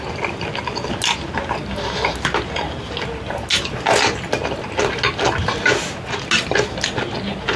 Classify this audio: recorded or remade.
recorded